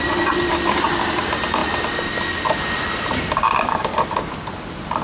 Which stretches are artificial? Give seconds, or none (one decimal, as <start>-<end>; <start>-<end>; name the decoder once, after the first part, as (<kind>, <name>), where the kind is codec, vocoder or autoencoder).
0.0-5.0 (vocoder, BigVGAN v2)